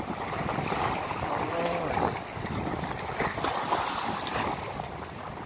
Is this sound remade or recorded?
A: recorded